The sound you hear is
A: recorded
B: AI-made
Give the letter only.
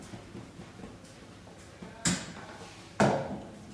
A